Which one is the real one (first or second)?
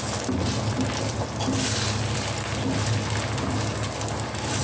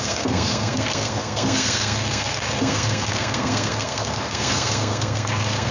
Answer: first